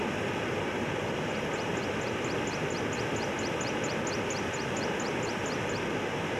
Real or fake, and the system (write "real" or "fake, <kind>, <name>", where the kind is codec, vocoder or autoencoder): real